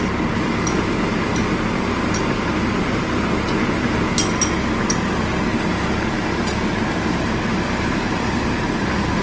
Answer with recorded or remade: recorded